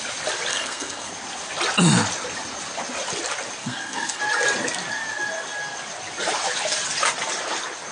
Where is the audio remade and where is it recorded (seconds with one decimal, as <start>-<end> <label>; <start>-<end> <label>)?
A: 0.0-0.5 recorded; 0.5-1.1 remade; 1.1-3.6 recorded; 3.6-4.2 remade; 4.2-7.9 recorded